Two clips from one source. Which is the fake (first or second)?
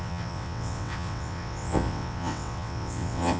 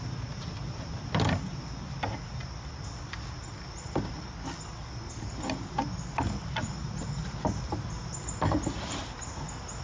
first